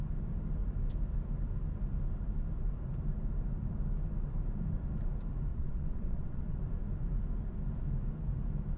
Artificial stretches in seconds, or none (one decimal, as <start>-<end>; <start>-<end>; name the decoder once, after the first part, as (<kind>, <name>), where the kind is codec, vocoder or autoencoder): 5.5-6.6 (vocoder, WaveNeXt)